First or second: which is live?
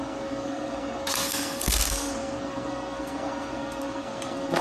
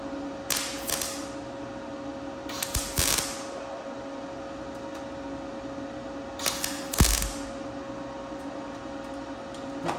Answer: second